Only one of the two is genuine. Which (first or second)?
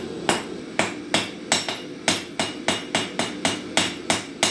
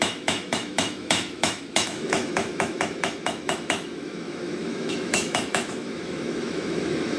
first